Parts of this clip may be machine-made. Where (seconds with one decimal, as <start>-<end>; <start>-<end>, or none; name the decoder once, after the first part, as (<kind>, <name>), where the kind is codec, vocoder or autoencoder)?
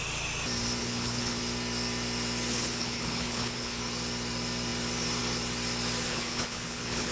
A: 0.8-1.4 (codec, HILCodec); 2.5-3.8; 6.1-7.1